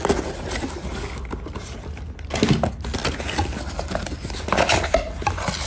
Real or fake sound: real